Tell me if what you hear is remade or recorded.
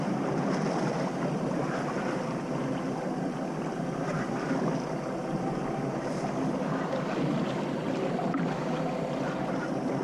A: recorded